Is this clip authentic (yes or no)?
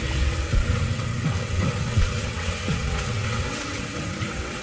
no